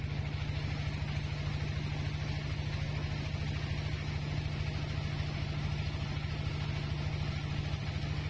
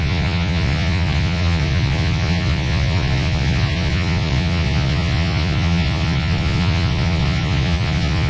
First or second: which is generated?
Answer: second